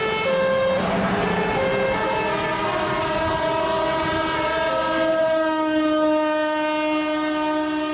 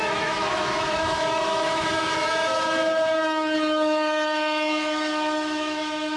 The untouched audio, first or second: first